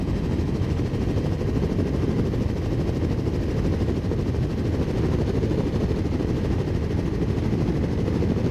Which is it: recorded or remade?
recorded